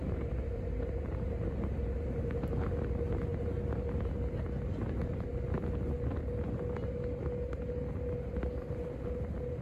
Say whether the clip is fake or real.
real